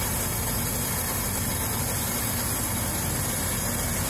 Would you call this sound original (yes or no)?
yes